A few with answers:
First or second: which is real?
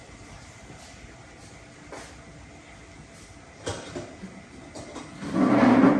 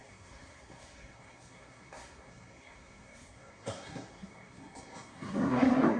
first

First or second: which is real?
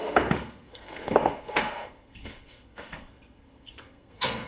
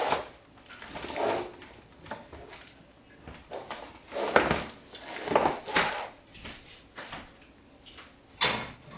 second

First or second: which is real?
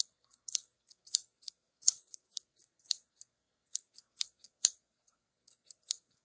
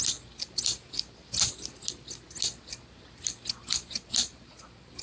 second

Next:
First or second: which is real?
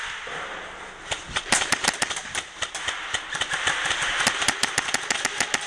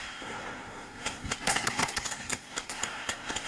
first